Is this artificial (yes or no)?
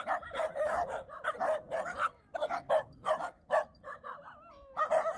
no